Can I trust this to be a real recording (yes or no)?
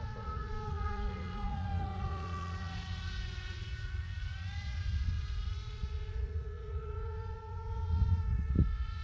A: no